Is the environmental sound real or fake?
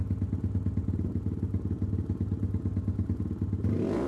real